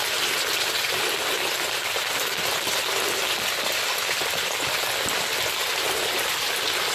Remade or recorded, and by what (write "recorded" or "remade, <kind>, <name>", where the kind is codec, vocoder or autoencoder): recorded